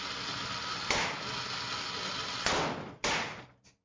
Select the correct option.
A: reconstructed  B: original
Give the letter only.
B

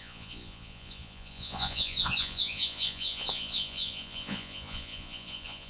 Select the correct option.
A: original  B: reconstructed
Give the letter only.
B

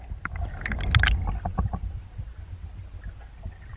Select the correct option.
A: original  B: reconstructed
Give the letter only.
A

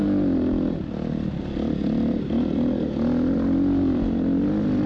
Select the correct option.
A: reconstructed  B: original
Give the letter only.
B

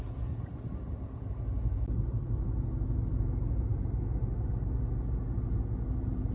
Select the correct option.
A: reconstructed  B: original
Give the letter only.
B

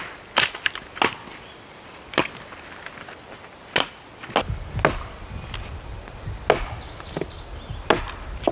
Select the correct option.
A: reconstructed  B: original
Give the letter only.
B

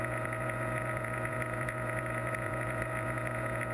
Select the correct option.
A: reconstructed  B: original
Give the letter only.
A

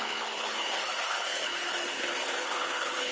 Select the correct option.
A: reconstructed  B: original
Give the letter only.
A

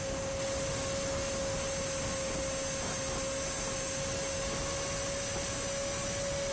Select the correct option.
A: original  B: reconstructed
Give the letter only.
A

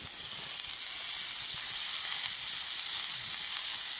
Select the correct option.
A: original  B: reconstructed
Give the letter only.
A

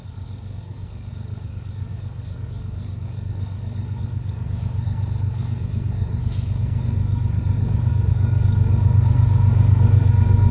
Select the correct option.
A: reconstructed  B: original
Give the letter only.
A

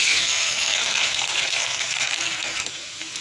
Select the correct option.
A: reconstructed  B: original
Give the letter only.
A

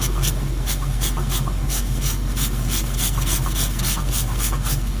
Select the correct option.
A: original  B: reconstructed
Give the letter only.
B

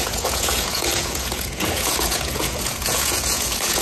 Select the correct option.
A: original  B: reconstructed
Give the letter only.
B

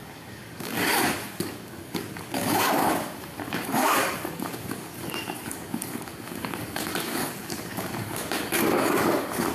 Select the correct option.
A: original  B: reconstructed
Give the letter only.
B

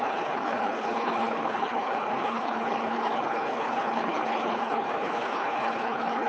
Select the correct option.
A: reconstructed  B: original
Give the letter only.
A